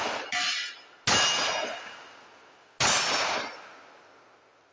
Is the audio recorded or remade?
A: recorded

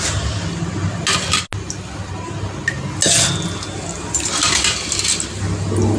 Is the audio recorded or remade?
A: recorded